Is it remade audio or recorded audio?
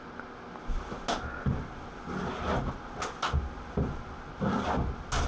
recorded